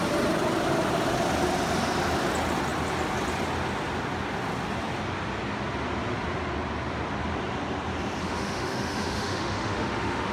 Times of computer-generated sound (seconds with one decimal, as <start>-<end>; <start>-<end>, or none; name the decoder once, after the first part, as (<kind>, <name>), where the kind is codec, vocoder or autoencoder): 8.2-10.3 (autoencoder, DAC-VAE)